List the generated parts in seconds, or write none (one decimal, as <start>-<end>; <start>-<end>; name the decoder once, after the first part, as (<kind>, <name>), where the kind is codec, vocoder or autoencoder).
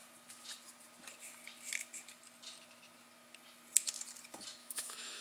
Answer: 4.6-5.2 (autoencoder, DAC-VAE)